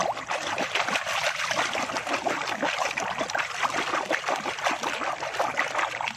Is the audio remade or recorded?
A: recorded